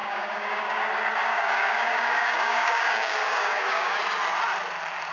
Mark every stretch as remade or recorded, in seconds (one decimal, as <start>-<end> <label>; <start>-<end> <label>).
0.0-0.8 remade; 0.8-1.3 recorded; 1.3-4.0 remade; 4.0-5.1 recorded

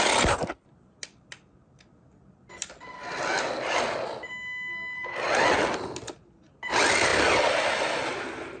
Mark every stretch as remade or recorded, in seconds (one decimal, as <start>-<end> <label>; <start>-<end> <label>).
0.0-8.6 recorded

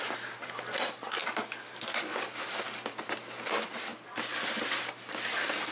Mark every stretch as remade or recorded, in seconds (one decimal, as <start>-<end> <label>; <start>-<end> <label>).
0.0-5.7 recorded

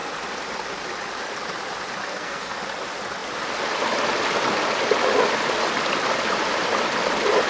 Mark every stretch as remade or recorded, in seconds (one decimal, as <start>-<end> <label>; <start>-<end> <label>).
0.0-2.0 recorded; 2.0-2.6 remade; 2.6-7.5 recorded

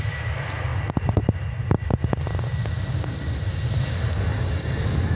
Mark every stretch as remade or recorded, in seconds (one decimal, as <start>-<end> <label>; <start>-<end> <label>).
0.0-0.7 remade; 0.7-3.8 recorded; 3.8-4.3 remade; 4.3-4.8 recorded; 4.8-5.2 remade

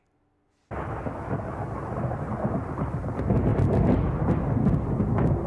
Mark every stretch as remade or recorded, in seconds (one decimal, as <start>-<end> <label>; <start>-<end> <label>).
0.0-5.5 recorded

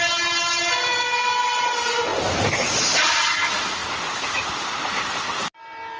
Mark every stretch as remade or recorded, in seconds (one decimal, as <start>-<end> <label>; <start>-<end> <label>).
0.0-6.0 recorded